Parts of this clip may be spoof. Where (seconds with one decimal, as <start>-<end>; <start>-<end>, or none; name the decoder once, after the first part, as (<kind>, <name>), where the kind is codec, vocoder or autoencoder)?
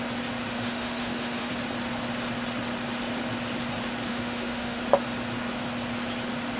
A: 0.5-1.5 (autoencoder, DAC-VAE); 4.1-4.8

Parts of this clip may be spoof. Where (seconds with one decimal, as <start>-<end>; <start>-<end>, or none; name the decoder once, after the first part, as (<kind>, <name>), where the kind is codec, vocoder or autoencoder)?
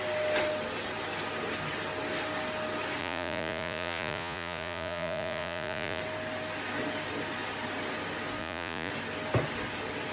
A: 3.0-6.0 (vocoder, Vocos); 8.4-8.9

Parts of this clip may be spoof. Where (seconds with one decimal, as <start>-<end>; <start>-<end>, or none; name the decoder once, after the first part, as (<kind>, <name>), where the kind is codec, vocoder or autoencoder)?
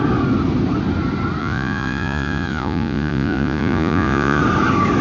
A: 1.4-4.4 (vocoder, Vocos)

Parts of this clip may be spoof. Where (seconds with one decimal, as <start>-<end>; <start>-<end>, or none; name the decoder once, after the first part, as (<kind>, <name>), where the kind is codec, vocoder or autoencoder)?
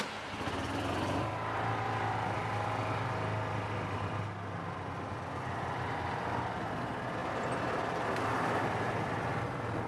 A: none